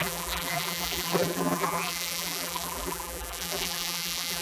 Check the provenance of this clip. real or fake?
fake